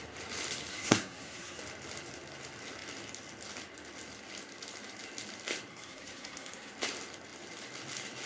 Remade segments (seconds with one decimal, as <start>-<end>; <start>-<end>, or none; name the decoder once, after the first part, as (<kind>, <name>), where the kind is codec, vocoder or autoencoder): 0.7-1.6 (codec, SNAC); 5.7-6.7